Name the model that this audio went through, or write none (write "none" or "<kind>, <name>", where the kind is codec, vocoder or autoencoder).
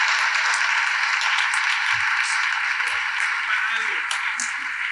none